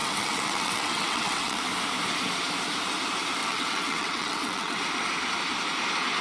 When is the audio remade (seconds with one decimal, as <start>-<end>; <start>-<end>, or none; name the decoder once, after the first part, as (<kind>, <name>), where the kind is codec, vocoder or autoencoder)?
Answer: 0.0-1.6 (vocoder, WaveNeXt); 3.4-4.8